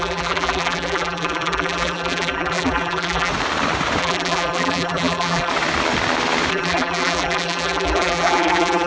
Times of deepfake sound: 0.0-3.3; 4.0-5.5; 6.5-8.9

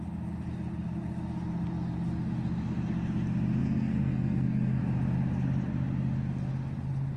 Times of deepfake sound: 3.6-4.8

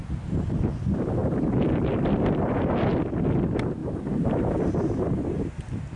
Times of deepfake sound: 3.8-4.5

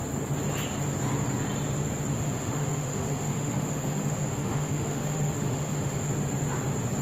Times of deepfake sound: 2.1-6.1

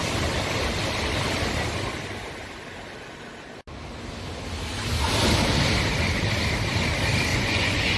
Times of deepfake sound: 7.3-8.0

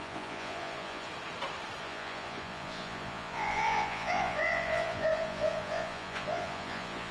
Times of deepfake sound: 0.0-1.1; 1.8-7.1

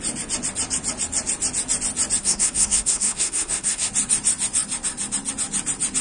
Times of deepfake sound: 2.2-3.9

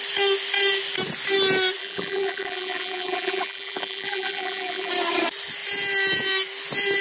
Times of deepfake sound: 1.8-4.9